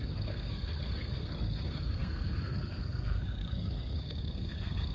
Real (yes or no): no